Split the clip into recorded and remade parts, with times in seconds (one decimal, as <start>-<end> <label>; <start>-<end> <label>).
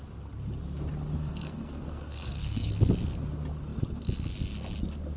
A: 0.0-1.2 recorded; 1.2-2.7 remade; 2.7-5.2 recorded